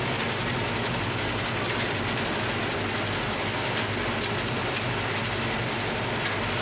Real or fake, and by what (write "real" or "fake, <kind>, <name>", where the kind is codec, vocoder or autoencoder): real